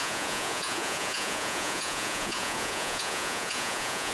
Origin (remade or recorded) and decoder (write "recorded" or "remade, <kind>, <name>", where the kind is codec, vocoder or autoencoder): remade, vocoder, Vocos